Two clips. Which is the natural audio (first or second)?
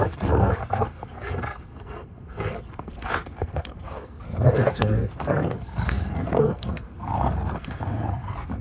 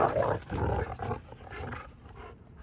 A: second